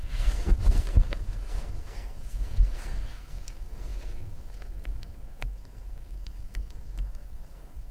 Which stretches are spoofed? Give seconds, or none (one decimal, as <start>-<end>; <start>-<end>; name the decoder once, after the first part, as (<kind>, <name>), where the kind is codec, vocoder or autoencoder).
0.0-7.9 (codec, SNAC)